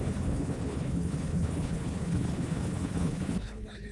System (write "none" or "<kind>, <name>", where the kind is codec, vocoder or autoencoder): codec, HILCodec